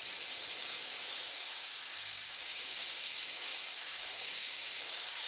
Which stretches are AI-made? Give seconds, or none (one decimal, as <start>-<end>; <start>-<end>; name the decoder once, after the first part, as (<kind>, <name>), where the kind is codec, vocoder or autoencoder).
0.5-5.3 (codec, DAC)